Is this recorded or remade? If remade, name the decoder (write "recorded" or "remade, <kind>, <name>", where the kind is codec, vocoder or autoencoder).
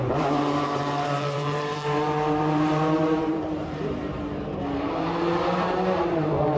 remade, vocoder, BigVGAN v2